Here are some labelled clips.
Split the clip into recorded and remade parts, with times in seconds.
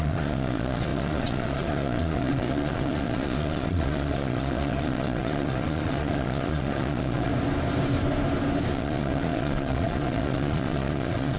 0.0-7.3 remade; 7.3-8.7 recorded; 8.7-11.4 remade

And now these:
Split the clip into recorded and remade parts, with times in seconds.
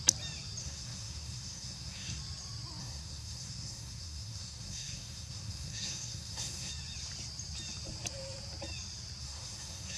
0.0-0.6 recorded; 0.6-2.2 remade; 2.2-2.8 recorded; 2.8-6.7 remade; 6.7-9.2 recorded; 9.2-10.0 remade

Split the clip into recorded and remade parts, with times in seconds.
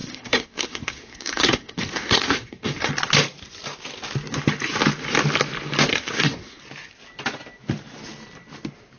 0.0-2.9 remade; 2.9-5.9 recorded; 5.9-6.6 remade; 6.6-9.0 recorded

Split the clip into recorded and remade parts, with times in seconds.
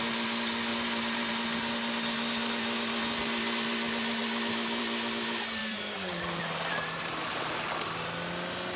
0.0-0.7 recorded; 0.7-1.3 remade; 1.3-5.6 recorded; 5.6-7.7 remade; 7.7-8.8 recorded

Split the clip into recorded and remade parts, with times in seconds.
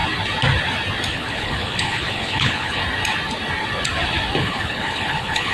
0.0-1.1 recorded; 1.1-2.8 remade; 2.8-4.4 recorded; 4.4-5.5 remade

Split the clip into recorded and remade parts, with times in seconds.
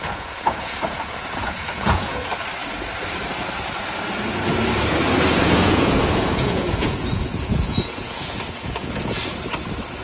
0.0-2.3 remade; 2.3-5.3 recorded; 5.3-9.2 remade; 9.2-10.0 recorded